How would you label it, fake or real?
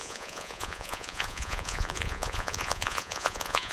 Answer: fake